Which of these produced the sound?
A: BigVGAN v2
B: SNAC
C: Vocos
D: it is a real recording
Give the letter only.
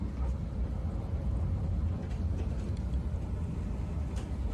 D